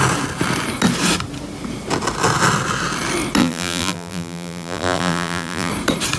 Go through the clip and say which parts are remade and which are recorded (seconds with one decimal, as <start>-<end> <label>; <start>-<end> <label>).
0.0-3.4 recorded; 3.4-5.7 remade; 5.7-6.2 recorded